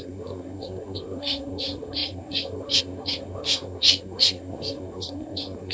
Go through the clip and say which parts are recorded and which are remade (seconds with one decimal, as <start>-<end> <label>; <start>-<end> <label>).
0.0-5.7 remade